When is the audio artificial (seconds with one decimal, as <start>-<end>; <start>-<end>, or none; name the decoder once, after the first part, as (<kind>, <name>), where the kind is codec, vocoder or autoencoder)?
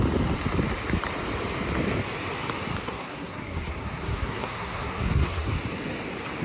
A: 2.8-5.5 (codec, SNAC)